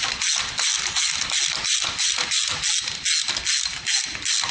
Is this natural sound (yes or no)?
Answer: yes